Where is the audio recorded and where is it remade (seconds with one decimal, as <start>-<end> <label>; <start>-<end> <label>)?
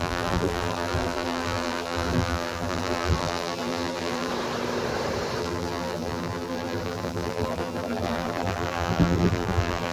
0.0-4.3 remade; 4.3-5.4 recorded; 5.4-9.9 remade